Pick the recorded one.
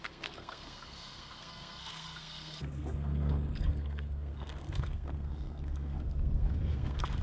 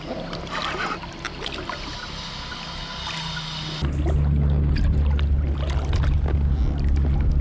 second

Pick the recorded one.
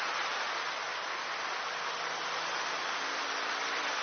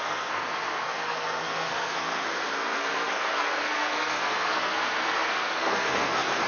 first